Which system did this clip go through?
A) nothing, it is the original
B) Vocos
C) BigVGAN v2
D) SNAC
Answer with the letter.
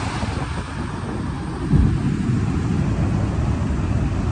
A